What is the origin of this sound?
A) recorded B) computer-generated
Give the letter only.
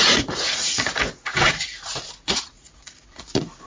B